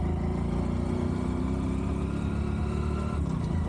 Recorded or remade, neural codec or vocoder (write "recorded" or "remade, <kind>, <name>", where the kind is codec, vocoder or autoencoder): recorded